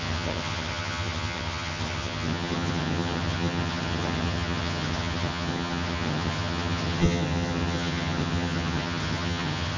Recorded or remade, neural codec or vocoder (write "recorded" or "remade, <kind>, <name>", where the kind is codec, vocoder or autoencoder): remade, vocoder, HiFi-GAN